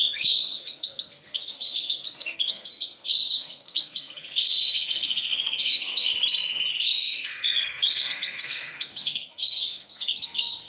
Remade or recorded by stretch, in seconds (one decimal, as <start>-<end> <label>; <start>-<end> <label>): 0.0-6.1 remade; 6.1-6.7 recorded; 6.7-10.7 remade